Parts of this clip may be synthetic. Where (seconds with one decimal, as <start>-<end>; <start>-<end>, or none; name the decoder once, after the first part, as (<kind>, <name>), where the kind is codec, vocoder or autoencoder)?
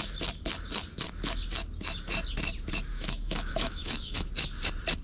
2.9-4.3 (autoencoder, DAC-VAE)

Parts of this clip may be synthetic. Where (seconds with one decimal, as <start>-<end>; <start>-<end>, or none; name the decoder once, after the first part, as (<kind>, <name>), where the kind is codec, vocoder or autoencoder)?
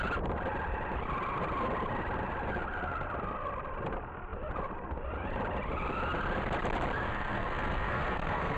7.1-8.6 (codec, SNAC)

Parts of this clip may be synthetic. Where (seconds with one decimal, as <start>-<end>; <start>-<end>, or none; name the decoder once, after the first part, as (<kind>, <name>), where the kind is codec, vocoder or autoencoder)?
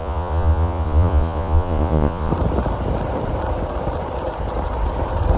0.0-2.3 (vocoder, Vocos)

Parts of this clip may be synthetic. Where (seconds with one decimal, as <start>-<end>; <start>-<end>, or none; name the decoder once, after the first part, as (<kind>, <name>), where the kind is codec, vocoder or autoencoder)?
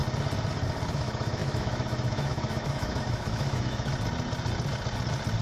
0.9-3.9 (autoencoder, DAC-VAE)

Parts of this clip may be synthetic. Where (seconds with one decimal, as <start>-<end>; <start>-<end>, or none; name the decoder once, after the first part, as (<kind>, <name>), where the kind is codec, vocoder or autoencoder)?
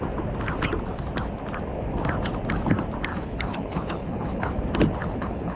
3.1-4.6 (codec, HILCodec); 5.0-5.6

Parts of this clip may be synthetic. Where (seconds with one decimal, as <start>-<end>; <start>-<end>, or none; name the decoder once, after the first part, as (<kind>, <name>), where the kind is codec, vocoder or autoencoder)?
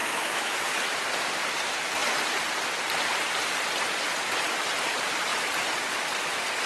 0.0-0.6 (autoencoder, DAC-VAE)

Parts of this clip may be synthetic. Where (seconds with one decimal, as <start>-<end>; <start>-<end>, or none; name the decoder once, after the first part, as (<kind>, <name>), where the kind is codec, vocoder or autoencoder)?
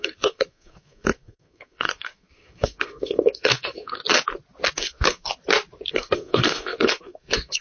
0.0-4.0 (codec, SNAC); 4.7-5.3; 5.9-7.6